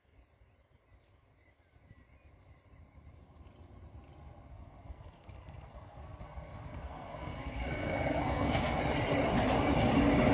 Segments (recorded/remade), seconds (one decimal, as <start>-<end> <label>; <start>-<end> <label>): 0.0-4.5 recorded; 4.5-8.8 remade; 8.8-10.3 recorded